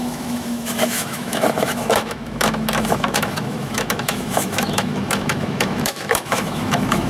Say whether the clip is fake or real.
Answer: fake